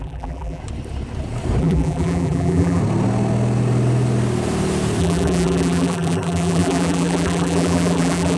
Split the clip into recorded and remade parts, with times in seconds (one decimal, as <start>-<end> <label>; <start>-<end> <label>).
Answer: 0.0-0.6 remade; 0.6-1.6 recorded; 1.6-2.8 remade; 2.8-5.0 recorded; 5.0-8.4 remade